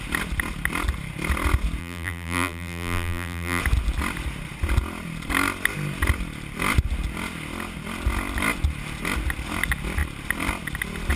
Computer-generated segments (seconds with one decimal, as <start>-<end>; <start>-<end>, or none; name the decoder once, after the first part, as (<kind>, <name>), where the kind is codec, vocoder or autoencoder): 1.8-3.6 (vocoder, BigVGAN v2)